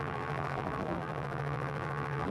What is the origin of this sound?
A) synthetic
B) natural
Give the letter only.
A